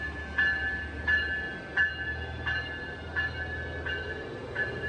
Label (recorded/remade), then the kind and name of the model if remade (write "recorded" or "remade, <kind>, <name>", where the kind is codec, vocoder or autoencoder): recorded